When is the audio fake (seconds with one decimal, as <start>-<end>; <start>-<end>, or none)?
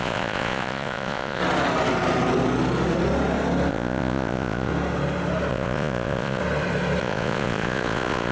0.0-1.4; 3.7-4.7; 5.5-6.4; 7.0-8.3